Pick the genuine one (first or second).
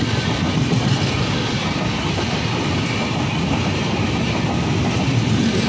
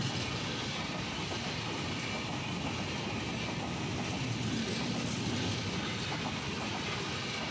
second